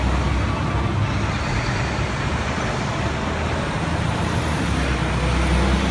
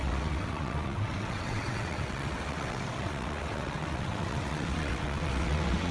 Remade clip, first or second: second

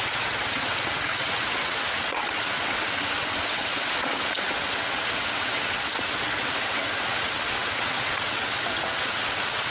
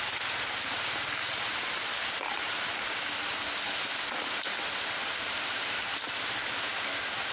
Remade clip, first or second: first